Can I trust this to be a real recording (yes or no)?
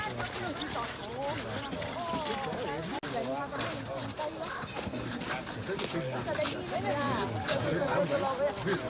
yes